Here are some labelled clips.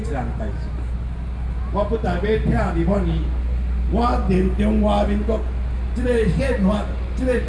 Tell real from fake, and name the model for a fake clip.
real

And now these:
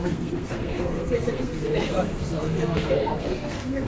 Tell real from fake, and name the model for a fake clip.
fake, codec, SNAC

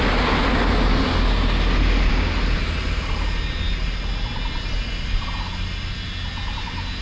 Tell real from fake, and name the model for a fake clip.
real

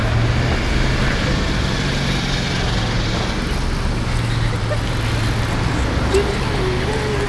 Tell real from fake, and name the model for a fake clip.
real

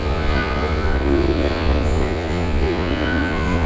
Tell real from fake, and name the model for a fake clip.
fake, vocoder, Vocos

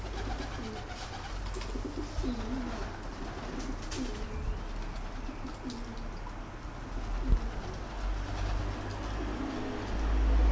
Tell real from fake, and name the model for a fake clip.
real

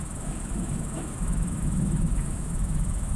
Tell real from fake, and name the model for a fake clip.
fake, autoencoder, DAC-VAE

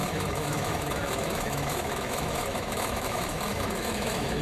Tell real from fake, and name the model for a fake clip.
fake, autoencoder, DAC-VAE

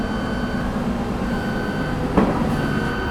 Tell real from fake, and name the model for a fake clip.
real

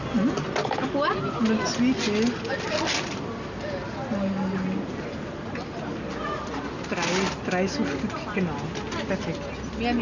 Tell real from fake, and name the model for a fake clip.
real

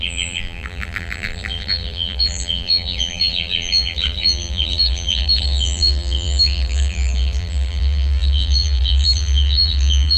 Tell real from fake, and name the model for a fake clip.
fake, vocoder, BigVGAN v2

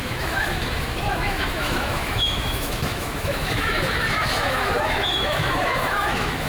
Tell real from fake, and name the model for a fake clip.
fake, autoencoder, DAC-VAE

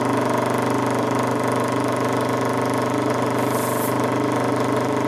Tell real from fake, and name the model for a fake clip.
real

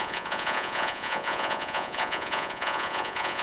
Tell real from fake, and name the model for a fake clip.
fake, vocoder, Vocos